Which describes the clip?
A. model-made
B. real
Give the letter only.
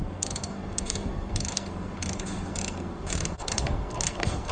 A